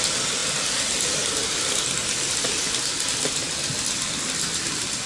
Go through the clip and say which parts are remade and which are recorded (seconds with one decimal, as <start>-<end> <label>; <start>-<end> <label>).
0.0-5.1 recorded